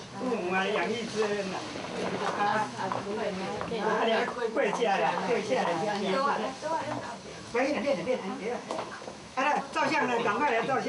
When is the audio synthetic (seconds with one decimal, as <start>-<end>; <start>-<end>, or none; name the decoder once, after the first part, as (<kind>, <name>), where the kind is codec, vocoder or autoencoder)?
2.5-6.3 (autoencoder, DAC-VAE); 7.3-9.6